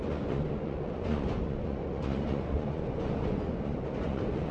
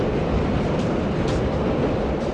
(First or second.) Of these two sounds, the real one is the second